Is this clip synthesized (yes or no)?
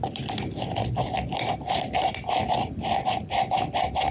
no